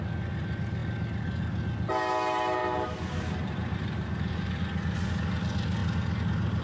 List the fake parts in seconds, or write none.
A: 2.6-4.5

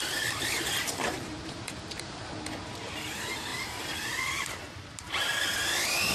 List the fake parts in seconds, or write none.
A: 0.0-6.1

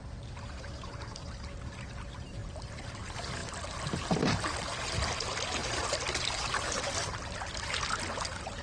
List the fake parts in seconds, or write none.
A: 2.4-3.0; 3.4-4.8; 5.6-7.3

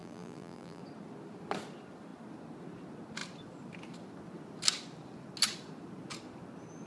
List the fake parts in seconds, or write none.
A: 0.0-0.8